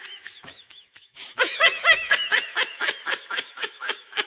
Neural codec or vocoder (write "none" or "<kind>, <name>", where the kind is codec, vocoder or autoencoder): autoencoder, DAC-VAE